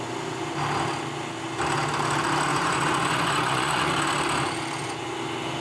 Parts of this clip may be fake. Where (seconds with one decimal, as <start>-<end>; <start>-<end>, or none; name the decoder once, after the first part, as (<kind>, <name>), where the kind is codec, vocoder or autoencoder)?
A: 2.5-3.9 (vocoder, Vocos)